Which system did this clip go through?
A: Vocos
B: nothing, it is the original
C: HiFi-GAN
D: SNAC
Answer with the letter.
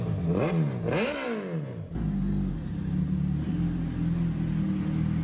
B